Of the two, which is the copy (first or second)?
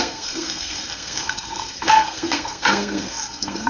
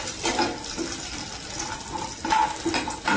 first